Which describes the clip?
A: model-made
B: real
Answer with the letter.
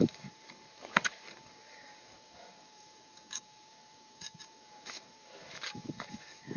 A